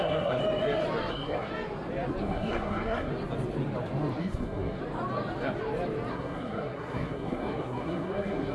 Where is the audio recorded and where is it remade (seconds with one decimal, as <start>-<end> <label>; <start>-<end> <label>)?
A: 0.0-0.4 remade; 0.4-1.1 recorded; 1.1-1.5 remade; 1.5-2.2 recorded; 2.2-3.1 remade; 3.1-4.2 recorded; 4.2-4.8 remade; 4.8-6.1 recorded; 6.1-8.5 remade